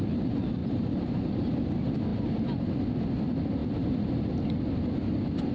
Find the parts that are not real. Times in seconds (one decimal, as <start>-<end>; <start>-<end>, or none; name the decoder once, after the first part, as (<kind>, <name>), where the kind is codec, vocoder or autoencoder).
0.6-1.3 (vocoder, BigVGAN v2)